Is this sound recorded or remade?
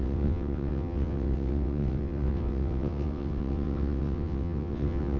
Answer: remade